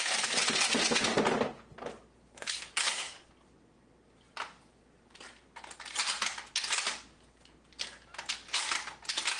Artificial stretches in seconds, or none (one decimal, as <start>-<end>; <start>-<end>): 2.3-3.3